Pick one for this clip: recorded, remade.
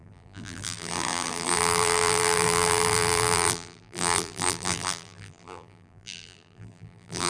remade